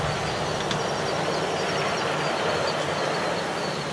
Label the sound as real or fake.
real